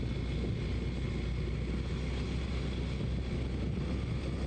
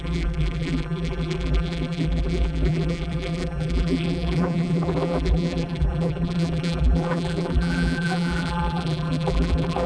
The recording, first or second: first